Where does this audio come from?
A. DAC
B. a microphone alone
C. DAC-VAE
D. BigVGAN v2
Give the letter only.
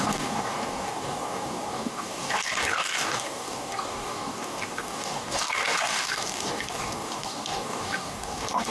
A